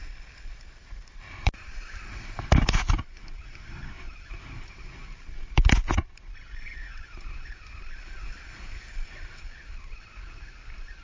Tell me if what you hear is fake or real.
real